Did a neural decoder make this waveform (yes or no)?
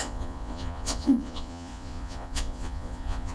yes